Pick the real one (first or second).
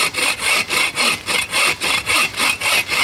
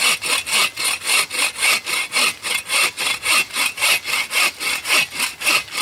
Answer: second